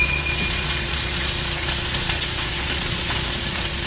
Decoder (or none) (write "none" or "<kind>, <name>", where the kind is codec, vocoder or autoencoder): vocoder, Vocos